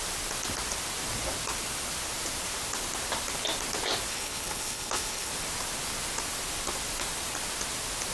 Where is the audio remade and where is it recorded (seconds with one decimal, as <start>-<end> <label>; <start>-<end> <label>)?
0.0-4.1 recorded; 4.1-5.3 remade; 5.3-8.1 recorded